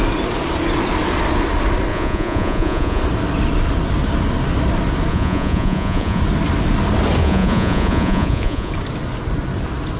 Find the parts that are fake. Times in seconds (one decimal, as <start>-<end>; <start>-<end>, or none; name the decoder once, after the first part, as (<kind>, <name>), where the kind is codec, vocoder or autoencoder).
1.9-3.0 (vocoder, Vocos); 5.1-6.2; 7.2-8.7